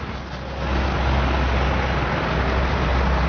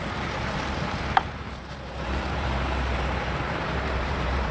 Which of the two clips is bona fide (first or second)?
first